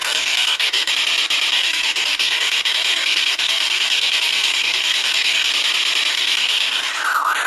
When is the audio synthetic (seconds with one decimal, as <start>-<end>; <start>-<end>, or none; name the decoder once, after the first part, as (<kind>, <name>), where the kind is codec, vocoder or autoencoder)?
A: 0.0-0.9 (codec, DAC); 1.5-5.5; 6.1-6.9